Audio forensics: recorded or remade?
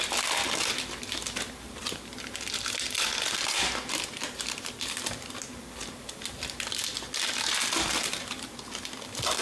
recorded